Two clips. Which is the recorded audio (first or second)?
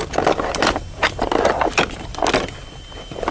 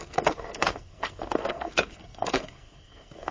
first